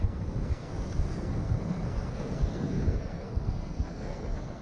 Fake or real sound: fake